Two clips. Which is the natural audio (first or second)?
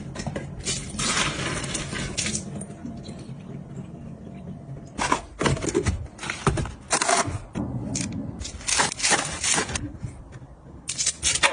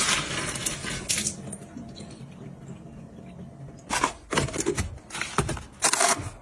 second